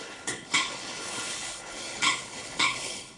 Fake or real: fake